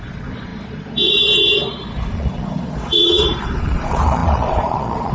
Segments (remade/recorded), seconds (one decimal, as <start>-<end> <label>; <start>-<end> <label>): 0.0-5.1 remade